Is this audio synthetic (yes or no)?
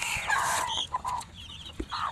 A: yes